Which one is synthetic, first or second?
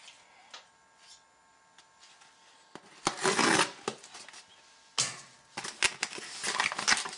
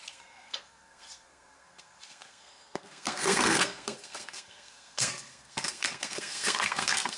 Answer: second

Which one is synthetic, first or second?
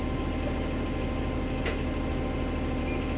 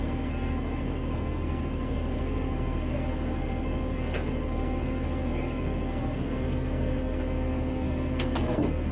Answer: second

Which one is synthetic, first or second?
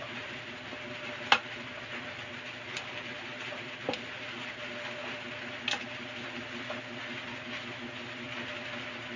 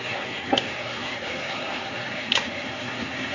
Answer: second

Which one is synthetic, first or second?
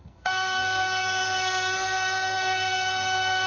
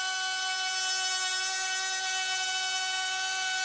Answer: first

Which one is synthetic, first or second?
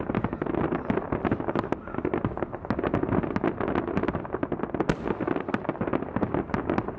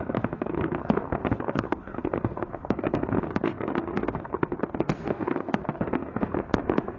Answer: second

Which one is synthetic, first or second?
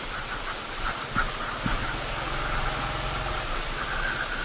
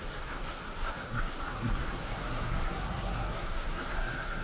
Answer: second